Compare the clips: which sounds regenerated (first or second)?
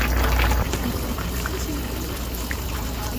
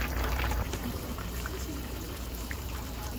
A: second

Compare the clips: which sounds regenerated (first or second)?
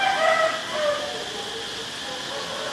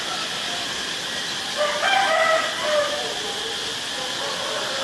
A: second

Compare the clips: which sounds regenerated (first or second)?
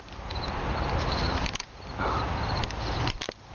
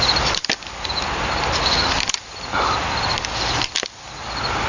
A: first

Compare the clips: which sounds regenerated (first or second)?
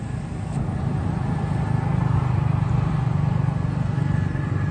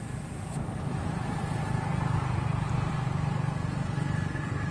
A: second